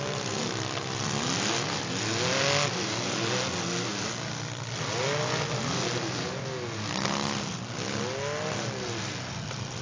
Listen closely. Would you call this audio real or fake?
real